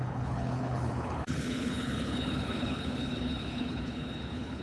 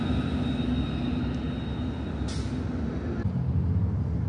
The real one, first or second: second